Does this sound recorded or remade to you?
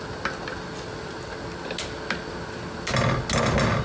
recorded